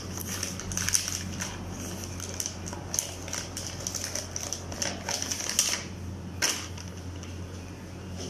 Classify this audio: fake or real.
real